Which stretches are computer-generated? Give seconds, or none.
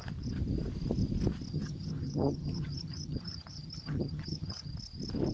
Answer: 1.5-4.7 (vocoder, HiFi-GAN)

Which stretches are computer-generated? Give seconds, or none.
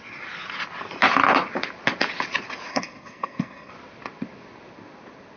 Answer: 2.7-3.7 (codec, SNAC)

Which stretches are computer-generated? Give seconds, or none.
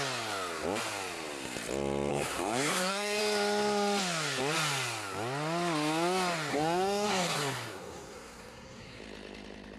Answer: 2.1-3.2 (codec, SNAC); 6.5-9.0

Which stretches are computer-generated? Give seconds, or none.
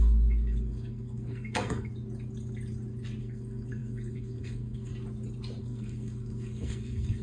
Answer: 0.0-1.9 (codec, SNAC); 3.2-4.9; 5.6-7.2